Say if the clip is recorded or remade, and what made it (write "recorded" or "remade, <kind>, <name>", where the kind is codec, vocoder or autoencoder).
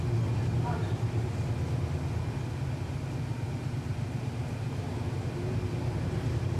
recorded